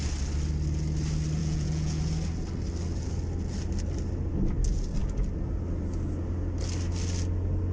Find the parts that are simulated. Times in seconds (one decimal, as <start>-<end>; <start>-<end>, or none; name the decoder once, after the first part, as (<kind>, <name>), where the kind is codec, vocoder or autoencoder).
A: 1.4-2.0 (vocoder, Vocos)